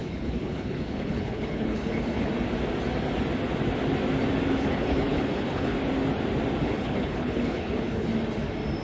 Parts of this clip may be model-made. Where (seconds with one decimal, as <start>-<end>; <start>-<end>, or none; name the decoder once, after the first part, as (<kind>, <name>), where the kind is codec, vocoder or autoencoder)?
0.0-2.3 (codec, HILCodec); 4.6-5.7; 6.6-8.1